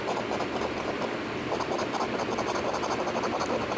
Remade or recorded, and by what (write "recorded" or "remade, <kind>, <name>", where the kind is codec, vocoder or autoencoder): recorded